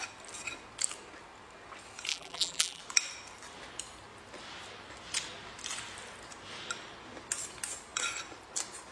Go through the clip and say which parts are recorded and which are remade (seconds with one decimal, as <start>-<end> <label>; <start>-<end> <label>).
0.0-2.1 recorded; 2.1-2.8 remade; 2.8-8.9 recorded